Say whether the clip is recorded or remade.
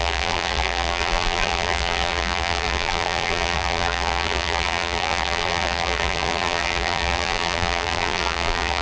remade